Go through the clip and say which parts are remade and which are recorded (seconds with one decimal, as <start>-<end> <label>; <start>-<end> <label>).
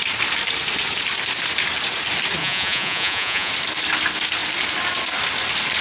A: 0.0-2.4 recorded; 2.4-3.5 remade; 3.5-5.8 recorded